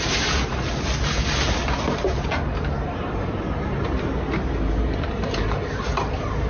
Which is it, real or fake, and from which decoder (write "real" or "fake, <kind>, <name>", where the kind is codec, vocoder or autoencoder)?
fake, vocoder, BigVGAN v2